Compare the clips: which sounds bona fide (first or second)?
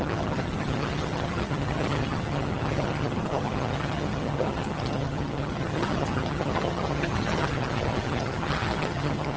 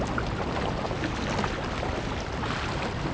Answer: second